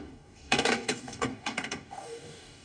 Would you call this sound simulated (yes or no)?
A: yes